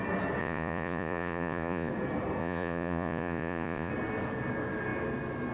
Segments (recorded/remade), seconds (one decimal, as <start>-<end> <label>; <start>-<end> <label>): 0.0-0.4 recorded; 0.4-1.9 remade; 1.9-2.4 recorded; 2.4-3.9 remade; 3.9-5.5 recorded